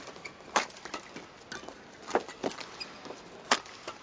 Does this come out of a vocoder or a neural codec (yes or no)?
no